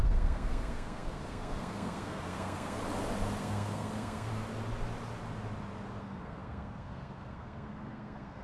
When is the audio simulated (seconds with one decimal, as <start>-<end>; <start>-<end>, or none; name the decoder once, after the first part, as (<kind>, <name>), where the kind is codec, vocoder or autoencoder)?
0.0-2.8 (codec, SNAC); 3.4-4.3; 6.0-8.4